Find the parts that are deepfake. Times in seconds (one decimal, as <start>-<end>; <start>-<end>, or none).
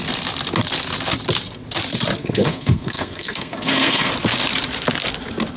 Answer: 2.2-4.1